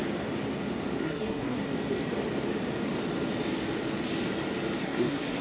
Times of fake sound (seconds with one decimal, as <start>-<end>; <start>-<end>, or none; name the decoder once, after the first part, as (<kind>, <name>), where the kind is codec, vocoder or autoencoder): 1.0-1.6 (codec, SNAC); 4.8-5.4